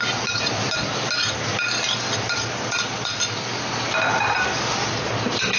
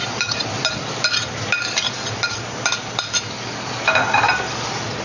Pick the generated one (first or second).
second